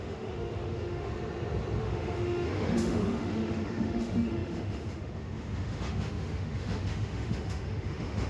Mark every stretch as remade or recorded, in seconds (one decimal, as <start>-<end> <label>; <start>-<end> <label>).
0.0-1.1 remade; 1.1-1.8 recorded; 1.8-8.3 remade